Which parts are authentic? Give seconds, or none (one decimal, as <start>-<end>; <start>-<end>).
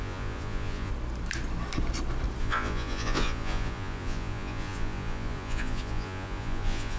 0.9-2.4